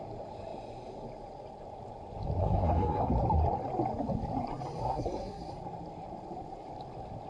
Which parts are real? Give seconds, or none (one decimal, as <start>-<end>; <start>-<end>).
0.0-2.4; 3.1-4.8; 5.5-7.3